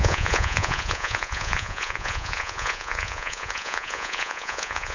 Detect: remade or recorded remade